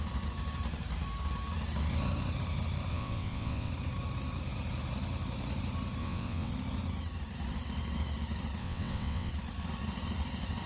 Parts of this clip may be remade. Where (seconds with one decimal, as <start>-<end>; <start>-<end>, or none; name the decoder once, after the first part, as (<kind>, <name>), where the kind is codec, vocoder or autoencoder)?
2.9-3.7 (vocoder, WaveNeXt); 6.0-6.5; 8.6-9.3